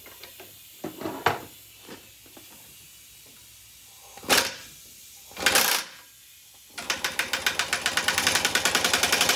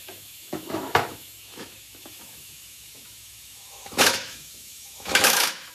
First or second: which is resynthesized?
second